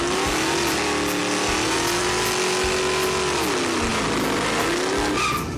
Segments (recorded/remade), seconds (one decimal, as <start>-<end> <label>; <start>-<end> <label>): 0.0-5.6 recorded